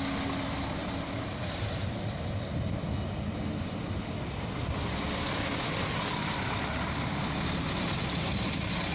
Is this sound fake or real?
real